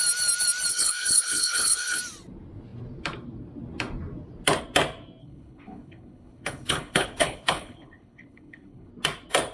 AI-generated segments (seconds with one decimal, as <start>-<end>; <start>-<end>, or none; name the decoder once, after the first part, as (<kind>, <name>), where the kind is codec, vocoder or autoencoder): 0.7-2.0 (codec, HILCodec); 5.2-8.9